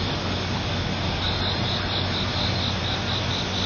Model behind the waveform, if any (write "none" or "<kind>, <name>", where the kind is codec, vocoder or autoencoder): none